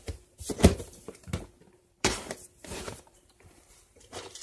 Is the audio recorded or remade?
remade